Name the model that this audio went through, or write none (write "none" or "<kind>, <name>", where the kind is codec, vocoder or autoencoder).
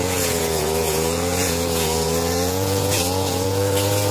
vocoder, Vocos